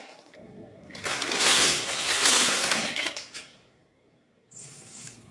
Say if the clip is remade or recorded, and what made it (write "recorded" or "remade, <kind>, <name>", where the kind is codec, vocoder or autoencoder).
remade, codec, SNAC